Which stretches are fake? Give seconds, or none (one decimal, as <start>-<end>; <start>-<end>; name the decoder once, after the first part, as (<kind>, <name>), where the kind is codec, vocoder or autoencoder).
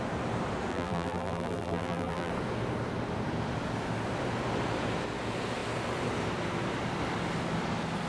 0.7-2.3 (vocoder, BigVGAN v2)